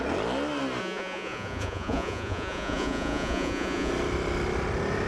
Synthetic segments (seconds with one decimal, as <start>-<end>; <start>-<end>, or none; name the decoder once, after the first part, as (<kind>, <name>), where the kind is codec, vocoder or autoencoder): 0.8-3.9 (vocoder, Vocos)